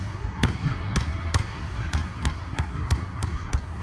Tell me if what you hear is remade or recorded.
remade